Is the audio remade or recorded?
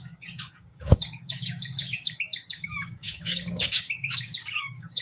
remade